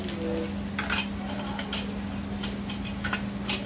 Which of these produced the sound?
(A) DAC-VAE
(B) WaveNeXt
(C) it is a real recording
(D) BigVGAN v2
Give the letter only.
C